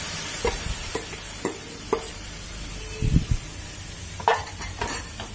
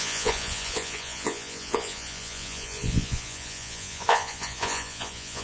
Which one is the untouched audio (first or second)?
first